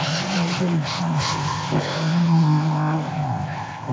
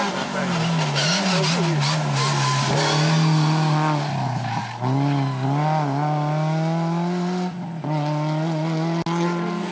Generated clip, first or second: first